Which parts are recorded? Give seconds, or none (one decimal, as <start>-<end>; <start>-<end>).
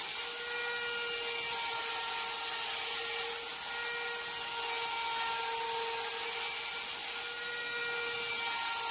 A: 0.0-8.9